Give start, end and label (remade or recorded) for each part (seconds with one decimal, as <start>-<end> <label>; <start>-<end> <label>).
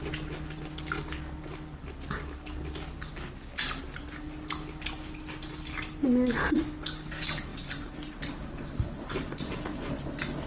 0.0-10.5 recorded